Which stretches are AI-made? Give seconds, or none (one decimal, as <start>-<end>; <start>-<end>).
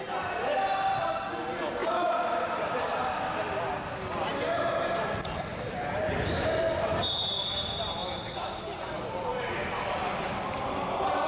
1.8-3.5; 5.5-6.5; 9.3-10.9